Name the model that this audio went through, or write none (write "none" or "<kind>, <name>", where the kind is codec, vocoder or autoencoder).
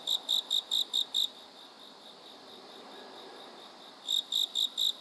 none